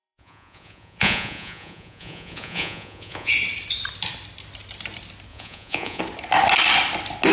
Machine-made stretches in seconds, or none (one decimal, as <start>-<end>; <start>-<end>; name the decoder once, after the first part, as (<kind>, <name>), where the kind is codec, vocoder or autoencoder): 0.0-3.3 (vocoder, Vocos); 5.3-6.0